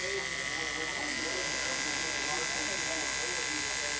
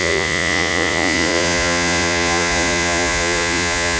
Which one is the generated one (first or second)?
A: second